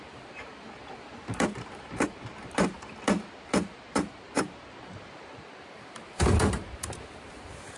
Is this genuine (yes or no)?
no